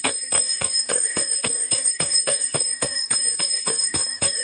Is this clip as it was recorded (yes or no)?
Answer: no